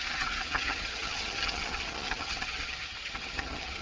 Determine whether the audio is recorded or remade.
remade